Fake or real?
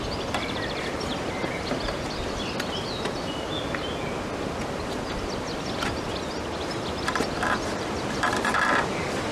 real